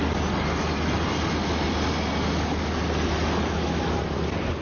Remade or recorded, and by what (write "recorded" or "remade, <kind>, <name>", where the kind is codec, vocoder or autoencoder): recorded